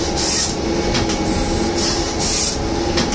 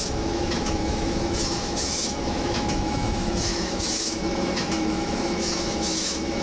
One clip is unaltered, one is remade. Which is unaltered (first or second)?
first